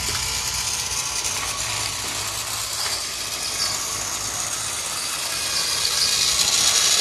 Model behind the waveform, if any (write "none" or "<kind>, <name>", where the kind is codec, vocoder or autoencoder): none